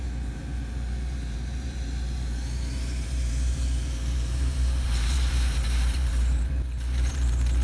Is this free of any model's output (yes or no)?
no